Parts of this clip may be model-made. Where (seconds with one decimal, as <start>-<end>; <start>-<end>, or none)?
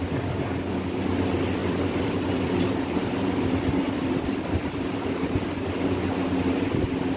1.6-5.9